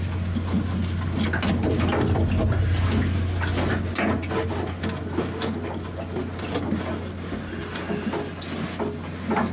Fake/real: real